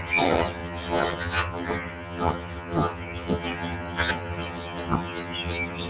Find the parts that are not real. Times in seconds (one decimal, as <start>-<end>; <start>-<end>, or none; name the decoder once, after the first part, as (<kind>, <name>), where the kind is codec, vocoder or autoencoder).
0.0-5.9 (vocoder, HiFi-GAN)